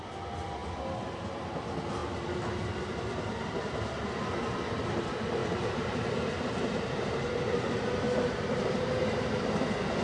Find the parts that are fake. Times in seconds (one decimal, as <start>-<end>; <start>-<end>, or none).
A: 5.4-9.3

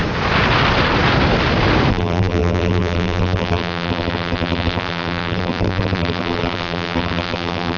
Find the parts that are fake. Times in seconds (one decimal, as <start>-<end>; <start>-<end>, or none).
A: 1.9-7.8

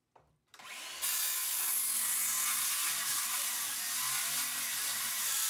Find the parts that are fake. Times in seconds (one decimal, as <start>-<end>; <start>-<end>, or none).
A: 0.5-1.2; 2.3-3.7

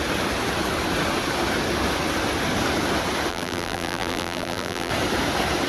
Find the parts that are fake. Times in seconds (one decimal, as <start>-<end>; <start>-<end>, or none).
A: 3.3-4.9

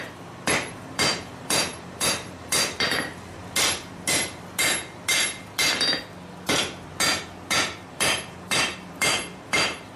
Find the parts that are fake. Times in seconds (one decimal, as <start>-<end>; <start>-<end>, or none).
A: 0.0-3.4; 7.9-10.0

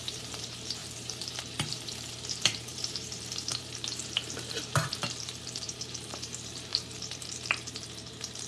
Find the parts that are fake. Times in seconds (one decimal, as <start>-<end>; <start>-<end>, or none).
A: 0.0-8.5

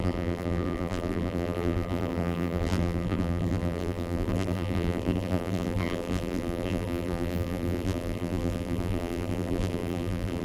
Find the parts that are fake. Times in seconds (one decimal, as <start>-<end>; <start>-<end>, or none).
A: 0.0-10.4

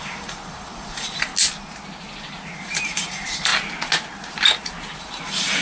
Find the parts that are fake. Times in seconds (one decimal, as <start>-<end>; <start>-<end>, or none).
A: 0.0-1.3; 2.6-3.5; 5.0-5.6